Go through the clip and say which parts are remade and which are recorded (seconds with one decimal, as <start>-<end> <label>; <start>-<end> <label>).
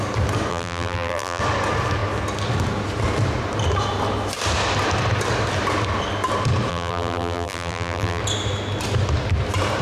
0.0-0.5 recorded; 0.5-1.4 remade; 1.4-6.7 recorded; 6.7-8.2 remade; 8.2-9.8 recorded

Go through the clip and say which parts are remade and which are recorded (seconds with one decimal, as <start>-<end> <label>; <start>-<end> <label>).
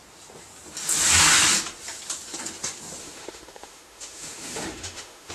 0.0-3.0 recorded; 3.0-5.3 remade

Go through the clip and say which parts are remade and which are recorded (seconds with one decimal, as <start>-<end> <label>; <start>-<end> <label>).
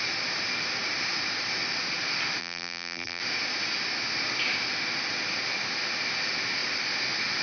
0.0-2.4 recorded; 2.4-3.2 remade; 3.2-7.4 recorded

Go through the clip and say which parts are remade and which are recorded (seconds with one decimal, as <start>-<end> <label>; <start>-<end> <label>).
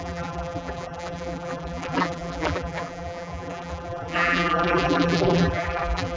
0.0-6.2 remade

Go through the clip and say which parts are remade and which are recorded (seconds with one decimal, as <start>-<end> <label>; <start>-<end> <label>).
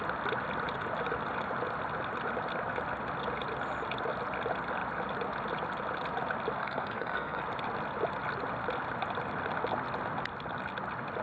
0.0-6.6 recorded; 6.6-7.4 remade; 7.4-11.2 recorded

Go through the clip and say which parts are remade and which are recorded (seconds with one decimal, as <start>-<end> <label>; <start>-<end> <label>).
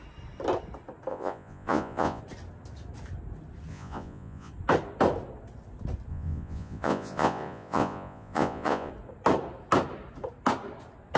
0.0-1.1 recorded; 1.1-2.2 remade; 2.2-3.7 recorded; 3.7-4.5 remade; 4.5-6.1 recorded; 6.1-8.9 remade; 8.9-11.2 recorded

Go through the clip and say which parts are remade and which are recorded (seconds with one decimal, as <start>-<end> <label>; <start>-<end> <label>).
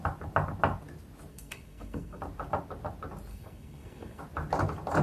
0.0-1.3 recorded; 1.3-2.2 remade; 2.2-3.3 recorded; 3.3-4.2 remade; 4.2-5.0 recorded